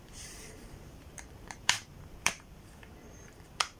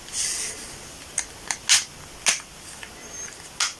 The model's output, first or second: first